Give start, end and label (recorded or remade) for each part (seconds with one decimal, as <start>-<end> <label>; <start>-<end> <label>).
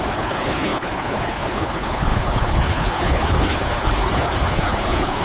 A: 0.0-5.2 remade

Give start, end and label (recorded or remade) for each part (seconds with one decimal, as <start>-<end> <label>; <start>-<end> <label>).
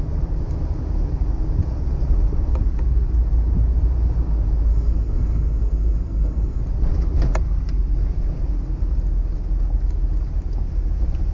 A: 0.0-4.7 recorded; 4.7-6.6 remade; 6.6-11.3 recorded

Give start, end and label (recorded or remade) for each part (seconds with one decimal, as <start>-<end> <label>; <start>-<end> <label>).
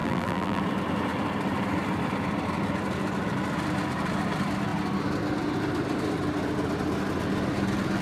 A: 0.0-0.6 remade; 0.6-8.0 recorded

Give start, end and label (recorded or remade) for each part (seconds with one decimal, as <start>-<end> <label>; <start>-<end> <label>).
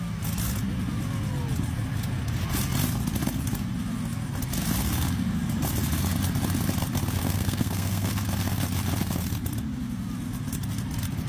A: 0.0-7.2 recorded; 7.2-8.1 remade; 8.1-11.3 recorded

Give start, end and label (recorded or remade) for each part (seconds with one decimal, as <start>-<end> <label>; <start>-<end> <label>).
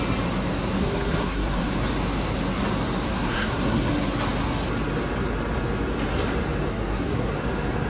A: 0.0-0.8 recorded; 0.8-1.7 remade; 1.7-3.1 recorded; 3.1-3.9 remade; 3.9-6.7 recorded; 6.7-7.3 remade; 7.3-7.9 recorded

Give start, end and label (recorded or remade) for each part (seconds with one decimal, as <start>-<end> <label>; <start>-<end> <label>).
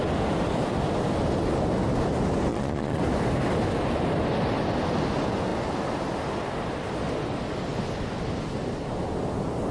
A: 0.0-2.5 recorded; 2.5-3.0 remade; 3.0-9.7 recorded